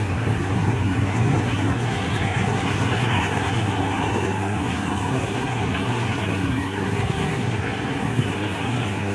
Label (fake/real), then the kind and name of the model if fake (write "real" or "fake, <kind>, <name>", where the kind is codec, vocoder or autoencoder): fake, codec, SNAC